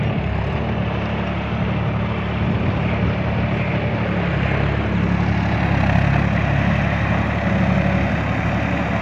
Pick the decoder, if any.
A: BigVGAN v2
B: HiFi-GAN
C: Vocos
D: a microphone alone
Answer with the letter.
D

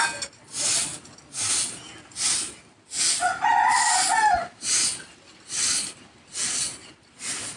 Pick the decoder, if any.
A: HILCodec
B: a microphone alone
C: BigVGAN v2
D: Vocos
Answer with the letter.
B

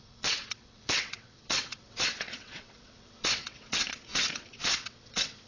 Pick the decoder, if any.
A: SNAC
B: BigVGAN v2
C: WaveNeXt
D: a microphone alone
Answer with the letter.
C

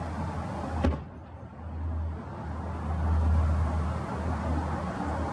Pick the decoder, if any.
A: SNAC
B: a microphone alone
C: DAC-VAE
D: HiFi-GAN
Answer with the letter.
B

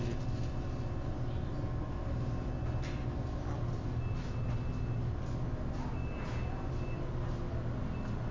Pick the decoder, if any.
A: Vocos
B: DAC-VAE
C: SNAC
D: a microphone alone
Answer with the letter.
D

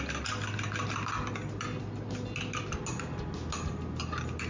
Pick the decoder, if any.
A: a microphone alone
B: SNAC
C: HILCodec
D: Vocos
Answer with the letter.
A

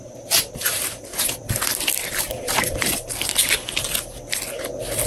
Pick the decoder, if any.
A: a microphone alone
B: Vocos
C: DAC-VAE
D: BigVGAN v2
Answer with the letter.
A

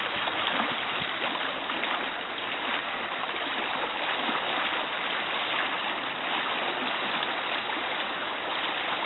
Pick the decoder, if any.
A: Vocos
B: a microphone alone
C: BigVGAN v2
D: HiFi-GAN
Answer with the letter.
B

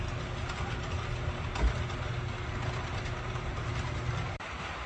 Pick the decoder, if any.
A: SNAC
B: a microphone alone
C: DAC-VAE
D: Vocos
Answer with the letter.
B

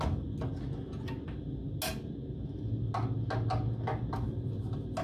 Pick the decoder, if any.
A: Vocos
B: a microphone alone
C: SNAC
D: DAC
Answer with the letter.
B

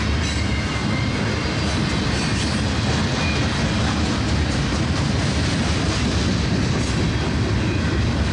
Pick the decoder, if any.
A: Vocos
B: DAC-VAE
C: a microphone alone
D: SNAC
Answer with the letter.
C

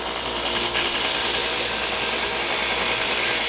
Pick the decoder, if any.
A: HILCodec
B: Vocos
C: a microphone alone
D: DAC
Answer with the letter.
C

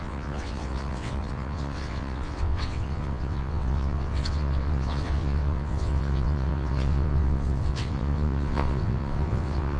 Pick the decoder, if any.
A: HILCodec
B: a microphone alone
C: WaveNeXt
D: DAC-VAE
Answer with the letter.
C